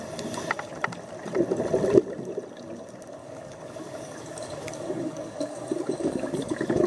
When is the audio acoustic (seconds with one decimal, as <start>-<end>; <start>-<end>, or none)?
0.0-3.2